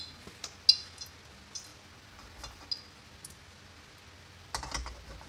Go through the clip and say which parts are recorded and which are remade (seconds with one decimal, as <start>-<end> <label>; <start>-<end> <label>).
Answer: 0.0-5.3 recorded